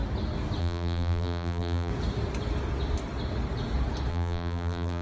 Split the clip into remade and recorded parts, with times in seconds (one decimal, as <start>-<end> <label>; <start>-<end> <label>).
0.0-0.6 recorded; 0.6-1.9 remade; 1.9-4.1 recorded; 4.1-5.0 remade